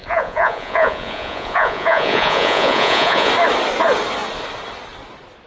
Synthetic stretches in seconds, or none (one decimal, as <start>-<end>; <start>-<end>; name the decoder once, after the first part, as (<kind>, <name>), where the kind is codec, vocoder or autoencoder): 0.0-3.3 (vocoder, Vocos)